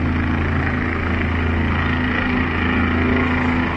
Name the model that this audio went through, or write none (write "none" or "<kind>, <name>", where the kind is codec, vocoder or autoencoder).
none